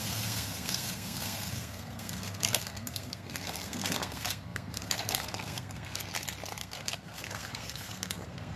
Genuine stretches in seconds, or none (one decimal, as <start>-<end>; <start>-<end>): 6.1-6.6